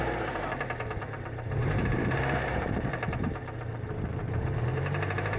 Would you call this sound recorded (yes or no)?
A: no